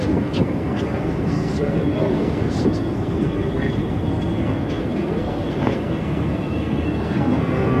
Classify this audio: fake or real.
fake